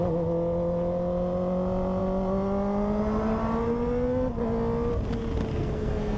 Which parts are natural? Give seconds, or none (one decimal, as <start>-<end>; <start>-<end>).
0.0-5.5